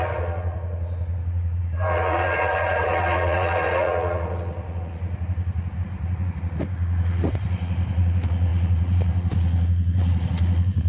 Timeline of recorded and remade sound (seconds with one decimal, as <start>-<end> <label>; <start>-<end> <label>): 0.0-10.9 remade